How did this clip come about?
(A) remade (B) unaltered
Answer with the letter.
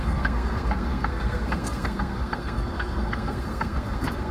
A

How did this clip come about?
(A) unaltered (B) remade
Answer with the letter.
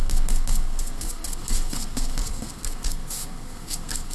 B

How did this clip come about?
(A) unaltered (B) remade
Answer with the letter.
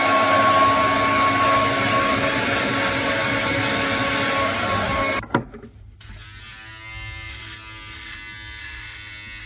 A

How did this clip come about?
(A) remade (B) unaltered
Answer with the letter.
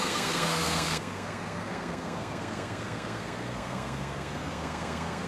A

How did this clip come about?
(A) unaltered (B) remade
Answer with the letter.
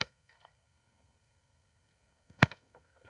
B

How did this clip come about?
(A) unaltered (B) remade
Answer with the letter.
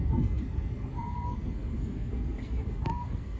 B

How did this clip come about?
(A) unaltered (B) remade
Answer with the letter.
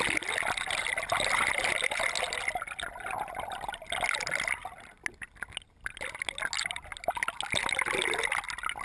A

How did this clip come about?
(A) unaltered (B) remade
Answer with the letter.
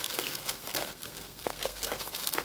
B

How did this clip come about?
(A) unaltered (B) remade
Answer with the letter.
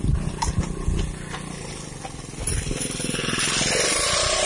A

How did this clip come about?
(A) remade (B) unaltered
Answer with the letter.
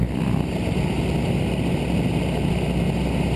B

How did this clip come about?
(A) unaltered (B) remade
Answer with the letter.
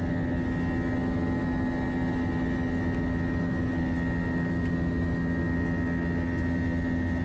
A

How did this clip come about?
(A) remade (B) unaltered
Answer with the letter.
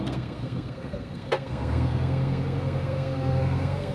A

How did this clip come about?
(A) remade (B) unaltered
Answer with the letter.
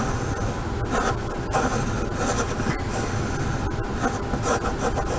B